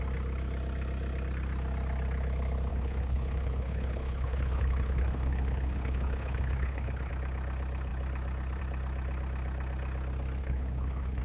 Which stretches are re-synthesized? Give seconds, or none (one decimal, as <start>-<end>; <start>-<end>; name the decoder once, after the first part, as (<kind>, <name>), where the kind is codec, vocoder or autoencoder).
2.7-7.1 (codec, HILCodec); 10.4-11.2